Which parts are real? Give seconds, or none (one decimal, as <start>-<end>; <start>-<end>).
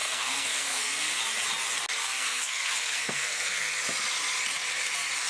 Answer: 1.2-2.0; 3.7-5.3